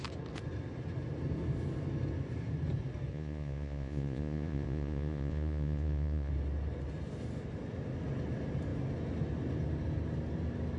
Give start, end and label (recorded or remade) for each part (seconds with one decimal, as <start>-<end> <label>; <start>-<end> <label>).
0.0-3.1 recorded; 3.1-6.3 remade; 6.3-10.8 recorded